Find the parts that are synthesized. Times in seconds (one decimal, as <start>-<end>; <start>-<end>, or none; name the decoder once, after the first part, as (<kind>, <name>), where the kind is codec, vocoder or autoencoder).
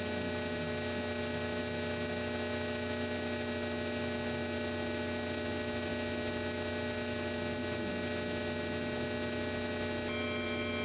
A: none